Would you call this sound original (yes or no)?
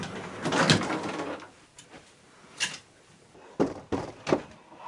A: yes